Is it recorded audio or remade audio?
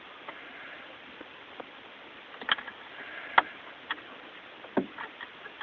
recorded